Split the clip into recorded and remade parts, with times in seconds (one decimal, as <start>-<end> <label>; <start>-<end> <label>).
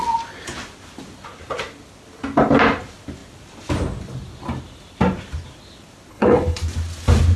0.0-6.1 recorded; 6.1-6.6 remade; 6.6-7.4 recorded